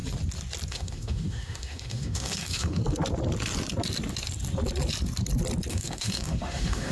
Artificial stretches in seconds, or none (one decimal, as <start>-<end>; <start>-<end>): 0.7-2.8; 5.7-6.9